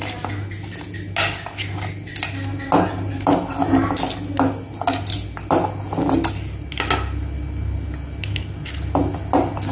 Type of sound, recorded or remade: recorded